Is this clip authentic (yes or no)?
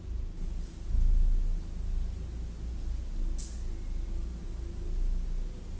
yes